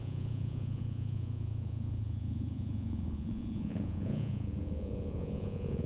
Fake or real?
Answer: fake